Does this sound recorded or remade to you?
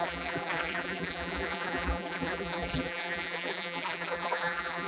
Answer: remade